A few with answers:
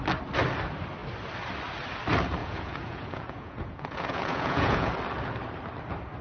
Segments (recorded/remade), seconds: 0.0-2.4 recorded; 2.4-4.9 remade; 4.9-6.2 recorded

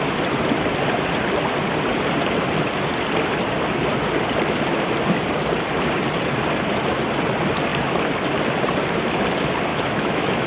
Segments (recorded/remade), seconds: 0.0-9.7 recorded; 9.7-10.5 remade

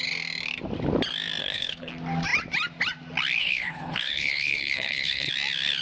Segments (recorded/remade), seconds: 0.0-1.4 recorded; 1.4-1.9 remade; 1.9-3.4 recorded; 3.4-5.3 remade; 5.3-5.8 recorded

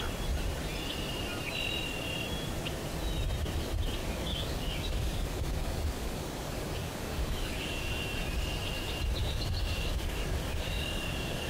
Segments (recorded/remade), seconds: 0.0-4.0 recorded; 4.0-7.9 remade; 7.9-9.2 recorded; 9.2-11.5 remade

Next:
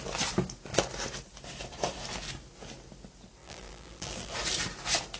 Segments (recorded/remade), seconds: 0.0-3.4 recorded; 3.4-4.3 remade; 4.3-5.2 recorded

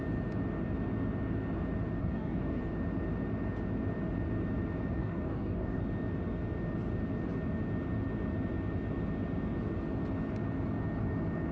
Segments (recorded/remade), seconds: 0.0-2.0 recorded; 2.0-2.6 remade; 2.6-5.0 recorded; 5.0-5.8 remade; 5.8-11.5 recorded